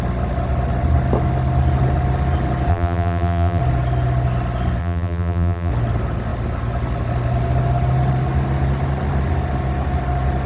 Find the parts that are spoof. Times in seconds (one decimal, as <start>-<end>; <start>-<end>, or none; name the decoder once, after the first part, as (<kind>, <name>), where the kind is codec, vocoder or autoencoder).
2.7-3.6 (vocoder, BigVGAN v2); 4.8-5.7